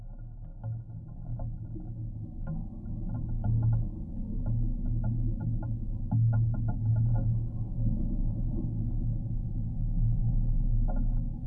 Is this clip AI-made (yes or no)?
no